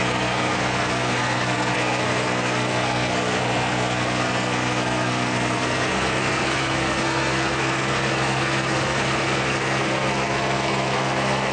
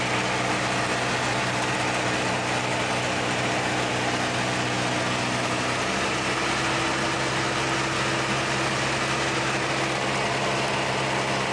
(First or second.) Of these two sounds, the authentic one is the second